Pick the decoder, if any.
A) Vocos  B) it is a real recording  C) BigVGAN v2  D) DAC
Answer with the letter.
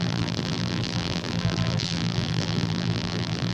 C